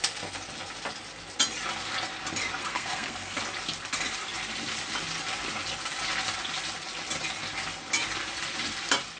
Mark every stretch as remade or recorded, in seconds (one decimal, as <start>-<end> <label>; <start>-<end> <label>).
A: 0.0-2.6 recorded; 2.6-3.4 remade; 3.4-9.2 recorded